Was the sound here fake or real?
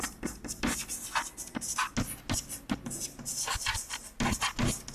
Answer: real